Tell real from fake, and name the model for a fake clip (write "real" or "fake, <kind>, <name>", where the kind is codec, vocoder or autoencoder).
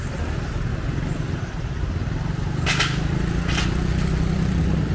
real